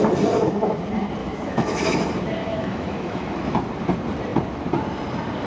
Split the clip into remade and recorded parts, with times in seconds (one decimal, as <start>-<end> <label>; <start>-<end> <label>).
0.0-1.2 recorded; 1.2-2.0 remade; 2.0-2.4 recorded; 2.4-3.7 remade; 3.7-5.5 recorded